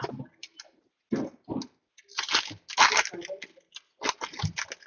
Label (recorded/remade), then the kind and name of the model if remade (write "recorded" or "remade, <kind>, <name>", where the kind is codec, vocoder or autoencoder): recorded